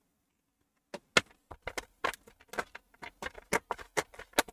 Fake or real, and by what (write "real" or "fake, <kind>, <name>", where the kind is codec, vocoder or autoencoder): real